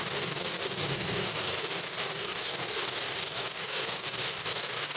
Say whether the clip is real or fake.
fake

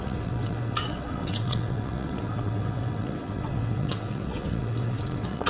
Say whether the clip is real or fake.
fake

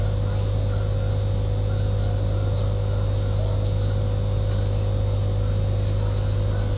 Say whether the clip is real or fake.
real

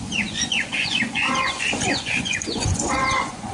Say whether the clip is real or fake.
fake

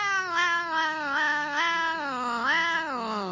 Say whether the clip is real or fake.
real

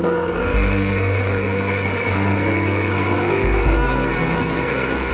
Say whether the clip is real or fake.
fake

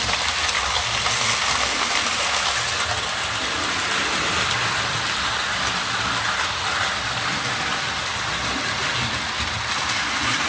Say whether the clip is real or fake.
real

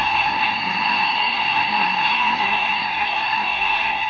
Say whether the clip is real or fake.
fake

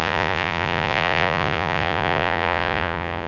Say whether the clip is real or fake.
fake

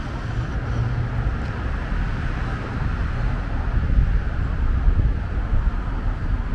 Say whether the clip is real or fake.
real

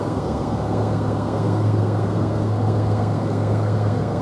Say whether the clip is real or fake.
fake